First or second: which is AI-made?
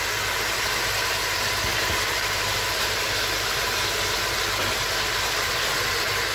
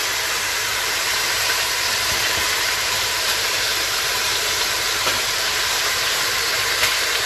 second